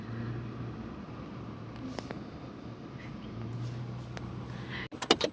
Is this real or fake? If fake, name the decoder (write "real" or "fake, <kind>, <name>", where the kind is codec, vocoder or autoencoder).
real